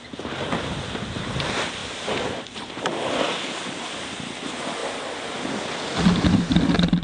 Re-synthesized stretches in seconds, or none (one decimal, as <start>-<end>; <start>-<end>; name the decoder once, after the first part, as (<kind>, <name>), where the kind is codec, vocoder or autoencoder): 1.8-3.9 (vocoder, BigVGAN v2)